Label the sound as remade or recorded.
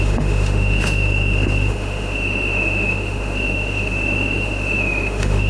remade